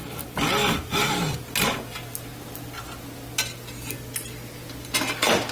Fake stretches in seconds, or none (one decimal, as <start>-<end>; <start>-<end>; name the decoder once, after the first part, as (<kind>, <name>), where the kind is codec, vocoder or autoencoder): none